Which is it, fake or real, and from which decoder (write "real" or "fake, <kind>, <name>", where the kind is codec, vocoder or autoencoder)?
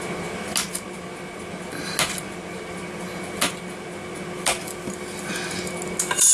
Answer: real